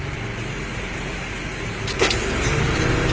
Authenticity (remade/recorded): recorded